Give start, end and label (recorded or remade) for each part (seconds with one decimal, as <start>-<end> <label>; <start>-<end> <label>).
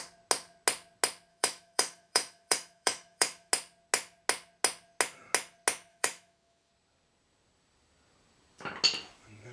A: 0.0-1.3 recorded; 1.3-3.5 remade; 3.5-5.9 recorded; 5.9-6.7 remade; 6.7-9.5 recorded